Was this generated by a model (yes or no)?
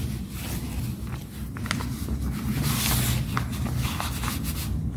no